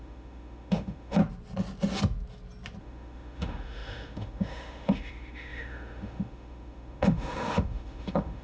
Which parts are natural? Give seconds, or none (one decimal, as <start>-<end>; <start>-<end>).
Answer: 1.2-2.8